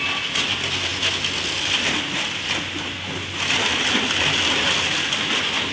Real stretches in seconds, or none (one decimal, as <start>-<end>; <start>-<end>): 0.0-5.7